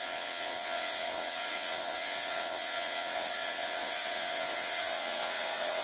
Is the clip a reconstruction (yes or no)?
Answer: yes